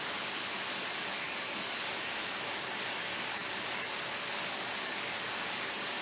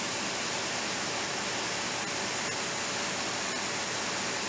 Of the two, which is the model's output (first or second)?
first